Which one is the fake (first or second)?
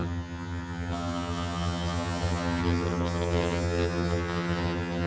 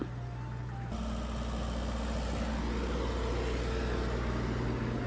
first